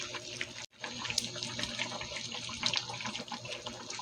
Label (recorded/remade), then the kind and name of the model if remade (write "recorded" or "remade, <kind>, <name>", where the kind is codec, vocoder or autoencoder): recorded